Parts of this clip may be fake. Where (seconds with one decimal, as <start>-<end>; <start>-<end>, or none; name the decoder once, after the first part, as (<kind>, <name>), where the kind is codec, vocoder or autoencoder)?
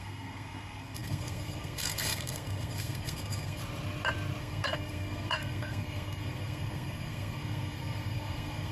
0.0-3.6 (codec, SNAC); 4.4-8.7